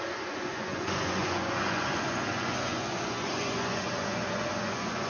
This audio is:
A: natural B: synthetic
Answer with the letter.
B